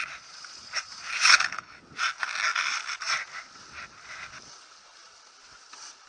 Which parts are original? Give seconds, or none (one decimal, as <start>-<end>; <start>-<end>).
0.0-1.3; 1.8-6.1